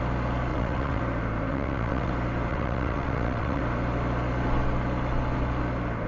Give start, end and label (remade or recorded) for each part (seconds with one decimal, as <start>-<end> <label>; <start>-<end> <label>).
0.0-0.5 recorded; 0.5-1.0 remade; 1.0-1.5 recorded; 1.5-2.1 remade; 2.1-2.5 recorded; 2.5-3.6 remade; 3.6-6.1 recorded

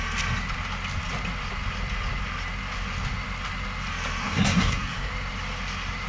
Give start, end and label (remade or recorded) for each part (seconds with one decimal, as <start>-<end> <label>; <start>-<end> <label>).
0.0-4.2 recorded; 4.2-5.1 remade; 5.1-6.1 recorded

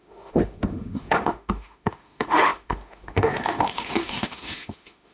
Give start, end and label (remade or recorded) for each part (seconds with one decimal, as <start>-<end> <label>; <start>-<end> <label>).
0.0-5.1 remade